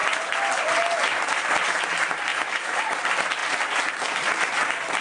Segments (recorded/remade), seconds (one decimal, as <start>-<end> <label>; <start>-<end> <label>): 0.0-2.3 recorded; 2.3-2.8 remade; 2.8-5.0 recorded